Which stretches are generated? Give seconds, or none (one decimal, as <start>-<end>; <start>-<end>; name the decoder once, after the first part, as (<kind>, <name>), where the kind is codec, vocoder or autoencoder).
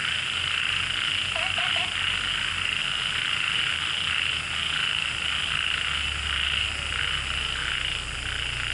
none